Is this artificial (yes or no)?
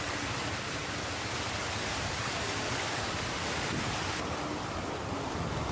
yes